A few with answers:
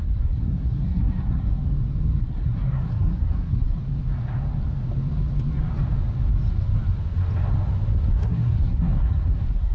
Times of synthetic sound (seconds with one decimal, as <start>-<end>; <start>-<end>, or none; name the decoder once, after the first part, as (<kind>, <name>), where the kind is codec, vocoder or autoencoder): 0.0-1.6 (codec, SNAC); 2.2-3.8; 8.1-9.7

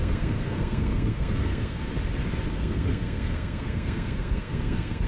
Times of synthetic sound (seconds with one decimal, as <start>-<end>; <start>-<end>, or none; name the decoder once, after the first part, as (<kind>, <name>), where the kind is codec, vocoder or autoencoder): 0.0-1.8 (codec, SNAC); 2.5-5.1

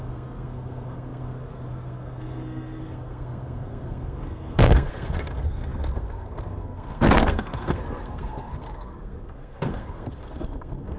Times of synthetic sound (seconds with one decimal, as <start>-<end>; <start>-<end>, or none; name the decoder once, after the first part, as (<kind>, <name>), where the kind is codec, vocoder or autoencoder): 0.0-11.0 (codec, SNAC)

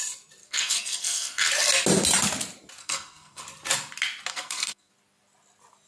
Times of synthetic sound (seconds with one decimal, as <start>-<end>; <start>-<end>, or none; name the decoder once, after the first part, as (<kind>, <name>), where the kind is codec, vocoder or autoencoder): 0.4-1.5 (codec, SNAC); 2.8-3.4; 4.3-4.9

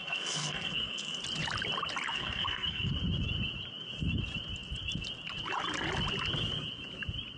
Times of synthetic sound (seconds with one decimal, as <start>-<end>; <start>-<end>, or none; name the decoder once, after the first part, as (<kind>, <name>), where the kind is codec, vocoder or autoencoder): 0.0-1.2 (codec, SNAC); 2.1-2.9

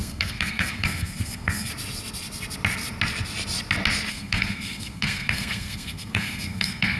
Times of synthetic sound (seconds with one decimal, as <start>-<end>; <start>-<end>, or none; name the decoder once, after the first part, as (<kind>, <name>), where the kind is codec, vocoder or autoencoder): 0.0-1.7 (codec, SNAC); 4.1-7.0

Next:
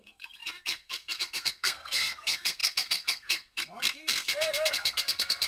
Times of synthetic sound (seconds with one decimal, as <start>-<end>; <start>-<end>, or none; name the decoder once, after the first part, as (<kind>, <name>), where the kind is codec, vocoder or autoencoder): 0.0-5.5 (codec, SNAC)